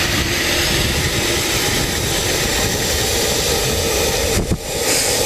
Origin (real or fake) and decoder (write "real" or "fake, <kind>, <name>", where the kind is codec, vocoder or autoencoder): real